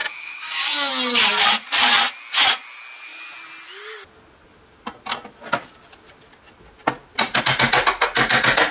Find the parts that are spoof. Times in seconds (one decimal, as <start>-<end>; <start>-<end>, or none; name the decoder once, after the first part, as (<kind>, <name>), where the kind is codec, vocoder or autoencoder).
0.0-0.9 (codec, DAC)